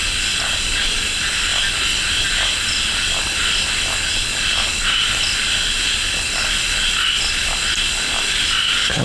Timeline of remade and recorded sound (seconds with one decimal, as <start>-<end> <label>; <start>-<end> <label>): 0.0-9.0 recorded